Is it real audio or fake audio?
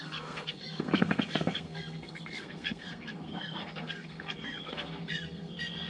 fake